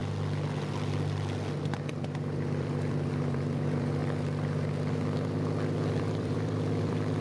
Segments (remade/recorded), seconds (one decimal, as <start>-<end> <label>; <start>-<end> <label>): 0.0-1.9 recorded; 1.9-4.0 remade; 4.0-5.9 recorded; 5.9-7.2 remade